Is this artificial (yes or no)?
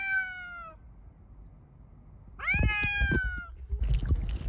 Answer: no